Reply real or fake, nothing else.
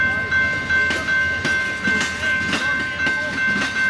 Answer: real